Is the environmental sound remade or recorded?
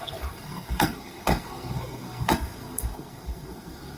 remade